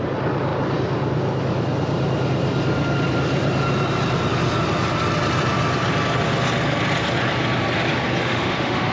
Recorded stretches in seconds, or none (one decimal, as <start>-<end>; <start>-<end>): 0.0-8.2